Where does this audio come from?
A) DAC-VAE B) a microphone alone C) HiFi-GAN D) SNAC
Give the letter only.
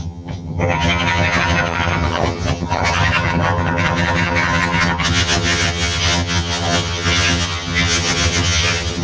C